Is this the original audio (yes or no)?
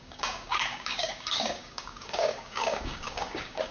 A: no